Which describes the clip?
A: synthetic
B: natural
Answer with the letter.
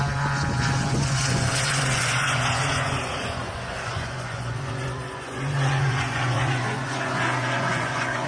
A